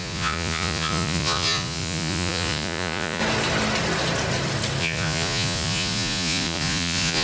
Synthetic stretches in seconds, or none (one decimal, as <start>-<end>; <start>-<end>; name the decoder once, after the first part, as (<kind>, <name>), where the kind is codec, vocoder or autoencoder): 0.0-3.2 (vocoder, Vocos); 4.8-7.2